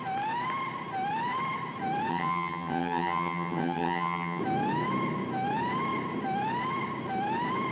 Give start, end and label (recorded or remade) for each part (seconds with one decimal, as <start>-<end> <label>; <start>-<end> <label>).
0.0-2.1 recorded; 2.1-4.4 remade; 4.4-7.7 recorded